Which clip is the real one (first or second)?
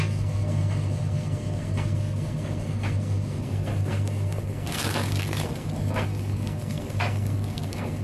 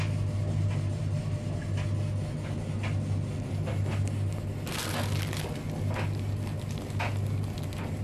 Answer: second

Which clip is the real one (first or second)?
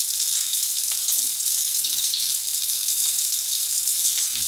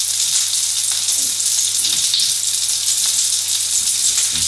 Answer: second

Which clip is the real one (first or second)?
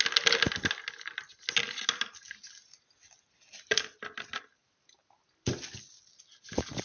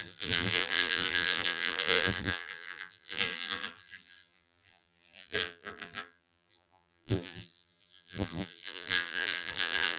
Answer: first